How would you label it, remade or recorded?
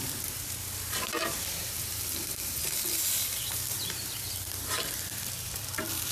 remade